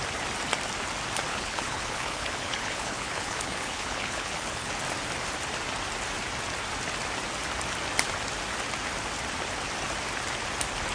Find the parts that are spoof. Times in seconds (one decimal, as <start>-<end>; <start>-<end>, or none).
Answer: 1.3-4.7